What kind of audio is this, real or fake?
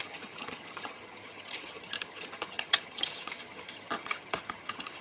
fake